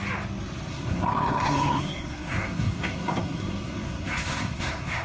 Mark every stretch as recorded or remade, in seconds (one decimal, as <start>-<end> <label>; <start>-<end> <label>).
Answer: 0.0-0.7 recorded; 0.7-5.0 remade